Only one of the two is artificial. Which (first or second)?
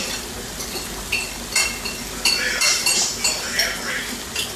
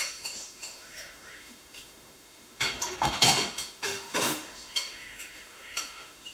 second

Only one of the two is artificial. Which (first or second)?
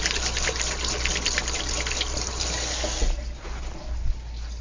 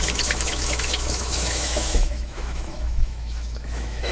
second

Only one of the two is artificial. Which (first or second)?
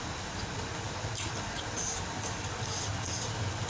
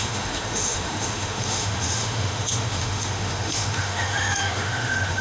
second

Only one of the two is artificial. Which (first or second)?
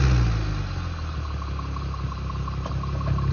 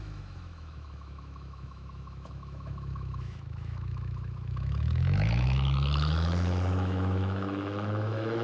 second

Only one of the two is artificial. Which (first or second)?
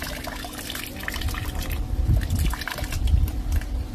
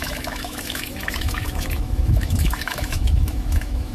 second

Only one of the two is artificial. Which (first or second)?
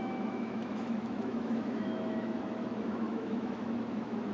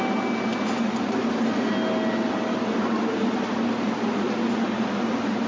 first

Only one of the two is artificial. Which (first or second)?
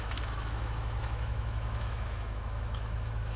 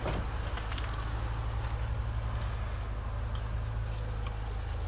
first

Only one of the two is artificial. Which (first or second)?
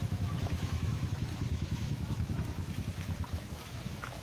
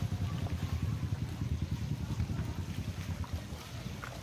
first